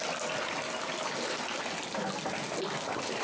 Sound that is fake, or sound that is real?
real